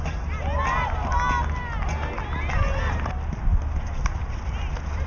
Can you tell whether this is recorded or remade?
recorded